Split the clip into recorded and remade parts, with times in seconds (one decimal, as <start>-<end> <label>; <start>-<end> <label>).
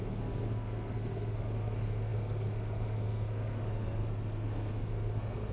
0.0-5.5 remade